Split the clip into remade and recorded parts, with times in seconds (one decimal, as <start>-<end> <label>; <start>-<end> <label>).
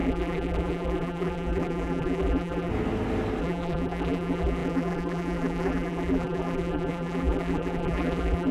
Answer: 0.0-2.7 remade; 2.7-3.4 recorded; 3.4-8.5 remade